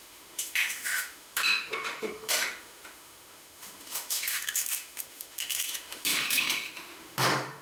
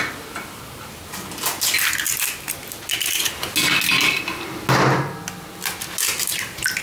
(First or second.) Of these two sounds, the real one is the second